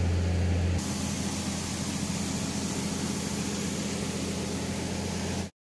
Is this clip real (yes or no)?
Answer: yes